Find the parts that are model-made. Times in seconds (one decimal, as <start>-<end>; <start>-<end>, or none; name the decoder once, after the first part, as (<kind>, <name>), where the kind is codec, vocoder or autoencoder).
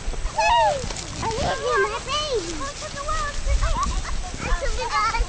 none